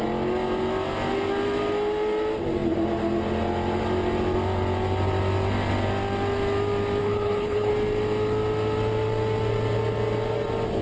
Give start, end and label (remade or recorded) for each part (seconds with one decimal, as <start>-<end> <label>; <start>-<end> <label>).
0.0-7.0 recorded; 7.0-7.7 remade; 7.7-10.8 recorded